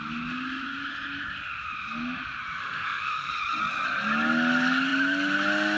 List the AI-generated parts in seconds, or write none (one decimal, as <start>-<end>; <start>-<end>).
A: 2.6-3.3